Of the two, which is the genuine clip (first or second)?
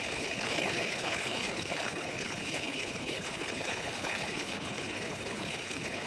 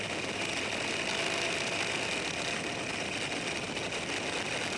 second